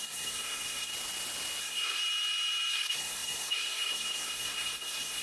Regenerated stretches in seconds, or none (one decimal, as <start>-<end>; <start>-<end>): 0.0-0.9; 1.6-2.0; 2.7-5.2